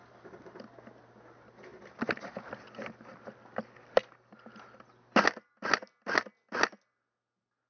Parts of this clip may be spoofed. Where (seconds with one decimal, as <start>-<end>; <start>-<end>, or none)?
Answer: none